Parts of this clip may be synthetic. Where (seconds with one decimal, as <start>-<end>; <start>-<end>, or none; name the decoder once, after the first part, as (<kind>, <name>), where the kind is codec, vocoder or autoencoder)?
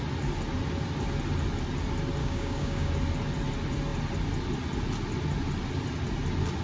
2.2-2.9 (codec, DAC)